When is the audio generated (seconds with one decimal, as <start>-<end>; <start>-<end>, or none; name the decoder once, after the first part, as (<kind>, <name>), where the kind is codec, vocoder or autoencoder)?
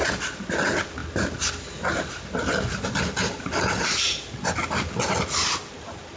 none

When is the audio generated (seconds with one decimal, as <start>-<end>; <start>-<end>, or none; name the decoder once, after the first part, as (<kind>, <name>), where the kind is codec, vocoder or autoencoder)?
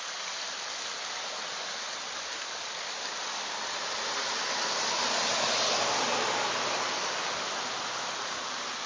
none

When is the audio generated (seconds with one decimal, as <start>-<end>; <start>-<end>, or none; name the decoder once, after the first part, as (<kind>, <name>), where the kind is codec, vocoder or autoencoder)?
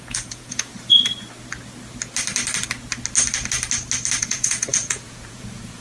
0.0-0.7 (vocoder, Vocos); 4.2-5.8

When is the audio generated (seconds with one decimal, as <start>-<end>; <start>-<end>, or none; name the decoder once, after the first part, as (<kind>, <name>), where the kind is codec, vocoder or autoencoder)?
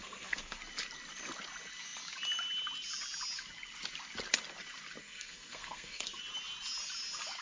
0.0-0.6 (codec, SNAC); 5.0-6.2